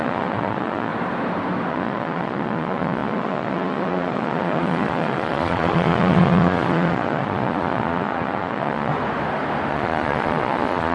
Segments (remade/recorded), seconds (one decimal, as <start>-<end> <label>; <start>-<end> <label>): 0.0-0.9 remade; 0.9-1.7 recorded; 1.7-8.9 remade; 8.9-9.7 recorded; 9.7-10.9 remade

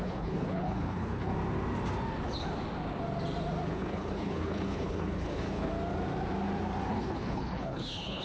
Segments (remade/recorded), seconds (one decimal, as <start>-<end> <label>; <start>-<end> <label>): 0.0-1.3 remade; 1.3-3.7 recorded; 3.7-5.7 remade; 5.7-6.9 recorded; 6.9-8.2 remade

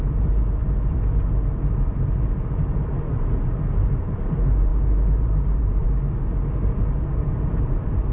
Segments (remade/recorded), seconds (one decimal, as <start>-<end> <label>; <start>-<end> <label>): 0.0-0.6 remade; 0.6-2.8 recorded; 2.8-4.7 remade; 4.7-5.2 recorded; 5.2-5.8 remade; 5.8-7.5 recorded; 7.5-8.1 remade